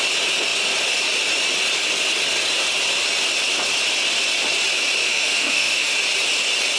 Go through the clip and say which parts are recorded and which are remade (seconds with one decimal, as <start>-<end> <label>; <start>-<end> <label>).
0.0-5.0 recorded; 5.0-5.9 remade; 5.9-6.8 recorded